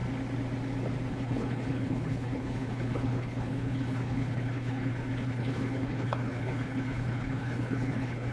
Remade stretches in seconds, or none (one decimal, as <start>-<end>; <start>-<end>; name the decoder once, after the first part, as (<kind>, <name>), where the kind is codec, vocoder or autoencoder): 1.1-8.3 (codec, HILCodec)